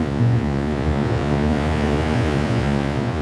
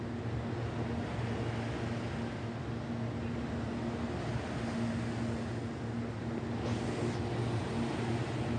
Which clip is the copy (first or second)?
first